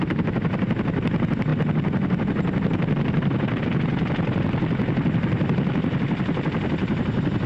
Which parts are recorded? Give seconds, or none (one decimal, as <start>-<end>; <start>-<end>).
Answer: 0.0-1.5; 3.6-6.8